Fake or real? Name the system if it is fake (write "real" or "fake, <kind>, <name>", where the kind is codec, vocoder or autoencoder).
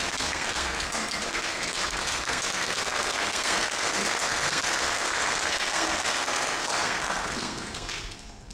fake, codec, SNAC